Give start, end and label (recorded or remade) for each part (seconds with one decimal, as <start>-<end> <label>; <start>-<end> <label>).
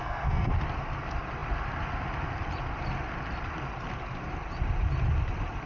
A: 0.0-0.5 remade; 0.5-5.7 recorded